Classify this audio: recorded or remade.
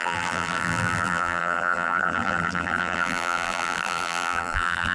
remade